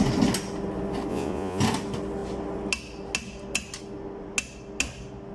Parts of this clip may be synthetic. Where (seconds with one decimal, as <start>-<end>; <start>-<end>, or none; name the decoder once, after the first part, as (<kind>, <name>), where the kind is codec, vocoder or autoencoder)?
1.1-1.6 (vocoder, Vocos)

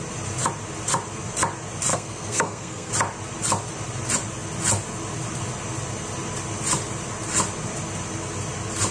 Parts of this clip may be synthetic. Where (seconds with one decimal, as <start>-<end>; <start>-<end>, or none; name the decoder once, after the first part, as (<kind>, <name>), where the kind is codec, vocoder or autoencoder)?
1.9-2.9 (codec, SNAC)

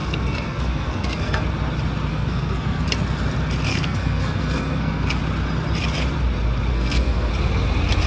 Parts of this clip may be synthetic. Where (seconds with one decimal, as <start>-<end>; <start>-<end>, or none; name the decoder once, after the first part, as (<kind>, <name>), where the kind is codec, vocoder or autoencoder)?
0.0-1.4 (codec, SNAC); 2.1-2.9; 3.7-5.2; 6.7-7.3